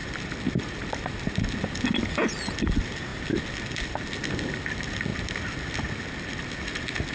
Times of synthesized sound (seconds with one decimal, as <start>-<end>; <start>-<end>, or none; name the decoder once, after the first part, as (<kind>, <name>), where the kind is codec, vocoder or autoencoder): none